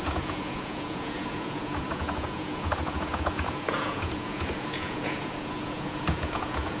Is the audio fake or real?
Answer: fake